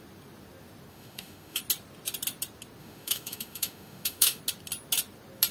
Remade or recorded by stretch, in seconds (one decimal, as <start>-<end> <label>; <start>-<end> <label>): 0.0-0.9 recorded; 0.9-1.6 remade; 1.6-2.8 recorded; 2.8-4.4 remade; 4.4-5.5 recorded